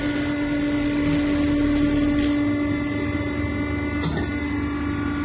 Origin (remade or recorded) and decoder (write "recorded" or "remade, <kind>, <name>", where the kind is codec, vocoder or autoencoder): recorded